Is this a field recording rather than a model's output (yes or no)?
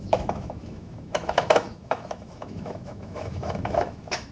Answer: no